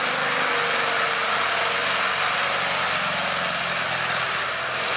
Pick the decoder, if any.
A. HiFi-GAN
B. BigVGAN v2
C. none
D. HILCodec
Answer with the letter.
C